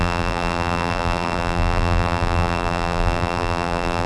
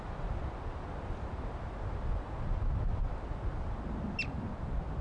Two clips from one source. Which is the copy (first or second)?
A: first